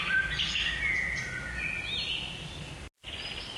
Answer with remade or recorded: recorded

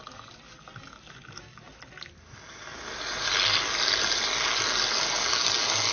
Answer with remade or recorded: recorded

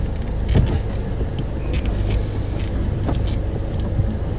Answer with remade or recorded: recorded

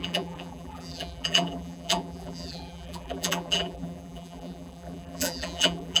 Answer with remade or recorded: remade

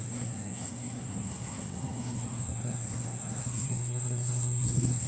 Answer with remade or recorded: remade